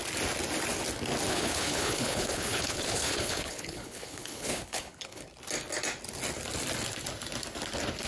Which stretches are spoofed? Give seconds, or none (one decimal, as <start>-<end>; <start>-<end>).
1.3-5.2